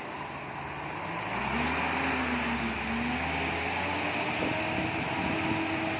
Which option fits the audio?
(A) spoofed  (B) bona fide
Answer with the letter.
B